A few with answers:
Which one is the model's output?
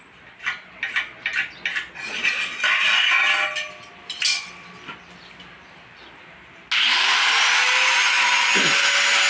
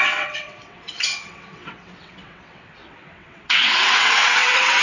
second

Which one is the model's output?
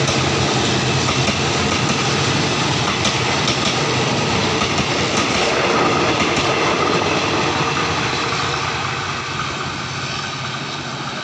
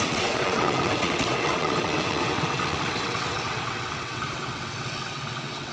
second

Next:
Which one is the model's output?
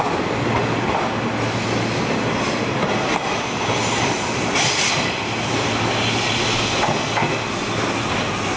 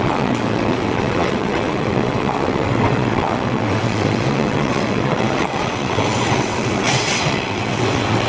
second